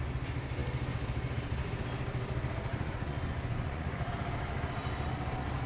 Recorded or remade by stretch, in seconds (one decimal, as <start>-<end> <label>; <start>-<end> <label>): 0.0-2.7 recorded; 2.7-4.1 remade; 4.1-5.7 recorded